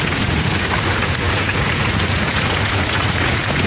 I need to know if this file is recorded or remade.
remade